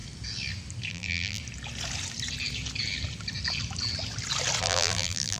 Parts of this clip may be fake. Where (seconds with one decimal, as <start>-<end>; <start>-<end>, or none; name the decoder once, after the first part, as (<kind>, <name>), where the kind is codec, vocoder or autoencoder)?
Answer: 0.9-1.4 (vocoder, BigVGAN v2); 4.6-5.4

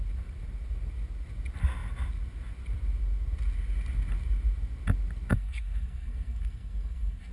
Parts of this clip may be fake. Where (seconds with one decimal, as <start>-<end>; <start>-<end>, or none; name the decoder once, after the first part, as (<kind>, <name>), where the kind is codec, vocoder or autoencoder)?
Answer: 5.3-7.3 (codec, SNAC)